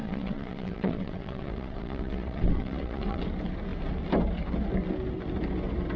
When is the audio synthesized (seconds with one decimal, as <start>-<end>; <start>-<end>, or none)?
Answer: 0.0-3.2